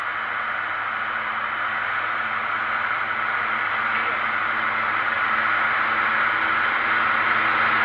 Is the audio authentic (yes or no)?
yes